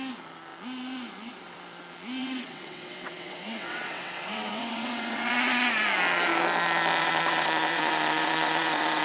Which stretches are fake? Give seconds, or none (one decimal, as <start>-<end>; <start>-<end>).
2.2-5.3; 7.0-9.0